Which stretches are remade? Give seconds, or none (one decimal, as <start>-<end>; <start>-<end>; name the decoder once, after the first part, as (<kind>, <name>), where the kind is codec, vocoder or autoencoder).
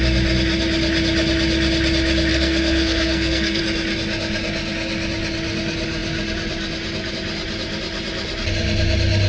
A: 2.3-3.6 (codec, SNAC)